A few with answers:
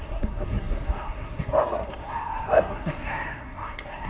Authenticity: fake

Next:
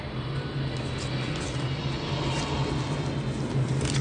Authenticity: real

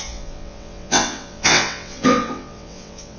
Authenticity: fake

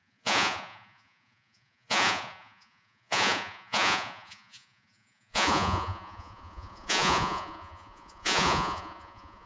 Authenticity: fake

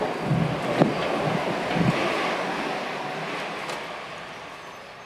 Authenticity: real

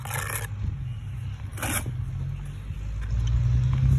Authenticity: real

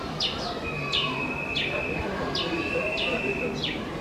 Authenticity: fake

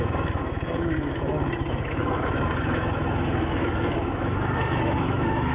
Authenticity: fake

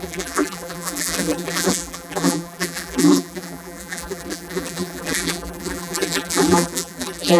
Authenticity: fake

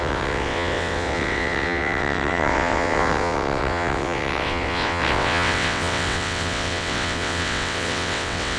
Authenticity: fake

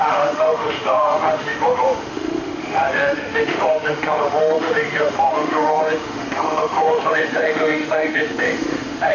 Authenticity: fake